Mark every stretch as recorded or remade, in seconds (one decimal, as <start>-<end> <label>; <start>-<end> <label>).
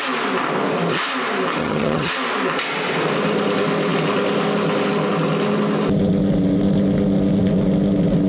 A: 0.0-1.6 recorded; 1.6-2.1 remade; 2.1-8.3 recorded